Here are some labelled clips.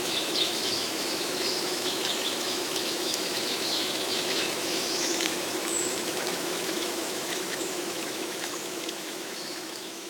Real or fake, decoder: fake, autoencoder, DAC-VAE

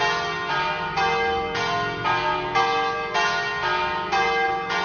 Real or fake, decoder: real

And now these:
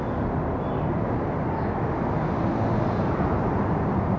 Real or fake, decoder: real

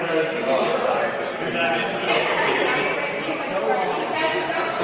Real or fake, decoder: real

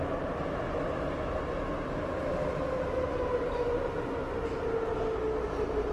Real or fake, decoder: real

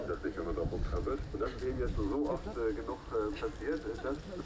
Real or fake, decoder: real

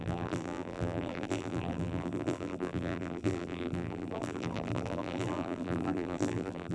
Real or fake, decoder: fake, vocoder, BigVGAN v2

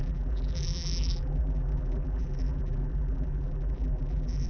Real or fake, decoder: fake, vocoder, BigVGAN v2